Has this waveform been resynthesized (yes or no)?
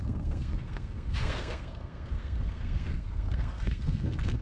yes